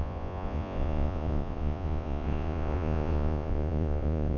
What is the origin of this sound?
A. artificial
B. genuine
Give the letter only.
A